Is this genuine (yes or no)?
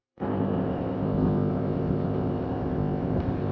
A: no